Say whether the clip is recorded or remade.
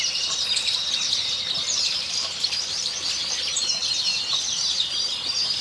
remade